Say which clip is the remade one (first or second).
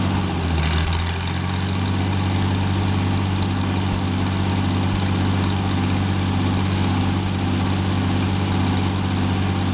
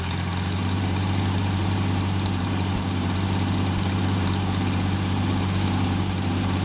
second